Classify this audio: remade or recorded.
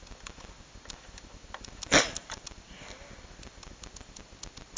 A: recorded